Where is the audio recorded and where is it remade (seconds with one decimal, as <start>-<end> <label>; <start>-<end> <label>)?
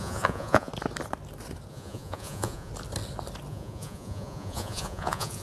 0.0-0.7 remade; 0.7-1.7 recorded; 1.7-2.7 remade; 2.7-3.5 recorded; 3.5-5.4 remade